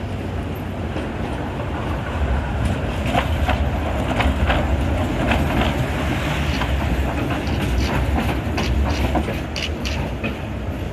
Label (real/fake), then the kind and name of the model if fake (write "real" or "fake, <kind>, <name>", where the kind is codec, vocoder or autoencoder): real